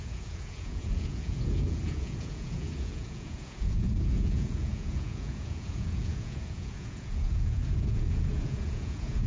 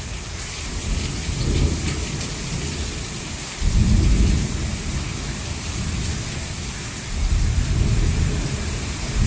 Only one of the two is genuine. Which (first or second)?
second